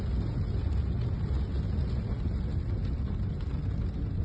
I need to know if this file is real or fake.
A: real